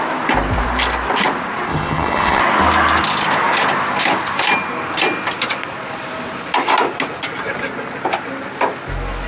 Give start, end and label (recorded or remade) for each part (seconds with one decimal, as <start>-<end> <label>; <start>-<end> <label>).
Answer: 0.0-1.7 recorded; 1.7-2.4 remade; 2.4-9.3 recorded

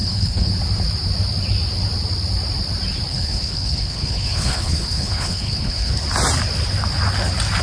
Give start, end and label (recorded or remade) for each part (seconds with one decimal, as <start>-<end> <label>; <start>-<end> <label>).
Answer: 0.0-0.5 remade; 0.5-3.1 recorded; 3.1-5.9 remade; 5.9-7.6 recorded

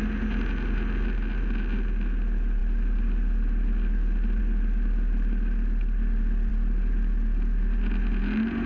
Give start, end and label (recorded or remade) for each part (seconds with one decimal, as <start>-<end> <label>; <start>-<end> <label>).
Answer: 0.0-8.7 recorded

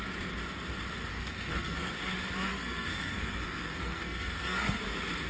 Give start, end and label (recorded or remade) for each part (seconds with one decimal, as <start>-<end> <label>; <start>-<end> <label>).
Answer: 0.0-1.1 recorded; 1.1-1.9 remade; 1.9-2.5 recorded; 2.5-4.8 remade; 4.8-5.3 recorded

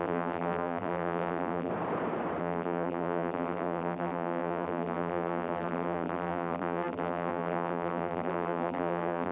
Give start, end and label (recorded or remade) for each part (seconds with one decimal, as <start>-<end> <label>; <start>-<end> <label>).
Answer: 0.0-1.7 remade; 1.7-2.4 recorded; 2.4-9.3 remade

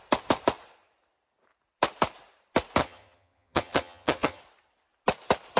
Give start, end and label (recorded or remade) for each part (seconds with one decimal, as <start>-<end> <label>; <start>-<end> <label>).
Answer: 0.0-2.8 recorded; 2.8-4.4 remade; 4.4-5.6 recorded

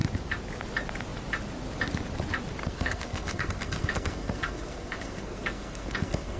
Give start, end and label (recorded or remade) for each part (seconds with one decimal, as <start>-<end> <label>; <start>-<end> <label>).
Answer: 0.0-2.6 recorded; 2.6-6.4 remade

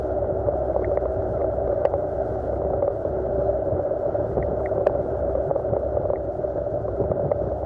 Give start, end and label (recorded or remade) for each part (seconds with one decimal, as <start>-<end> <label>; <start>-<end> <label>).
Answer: 0.0-7.7 remade